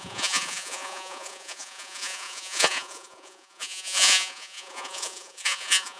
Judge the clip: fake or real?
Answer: fake